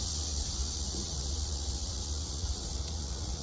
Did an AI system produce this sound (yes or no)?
yes